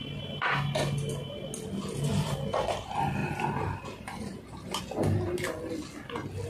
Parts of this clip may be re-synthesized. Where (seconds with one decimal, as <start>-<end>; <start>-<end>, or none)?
3.2-4.8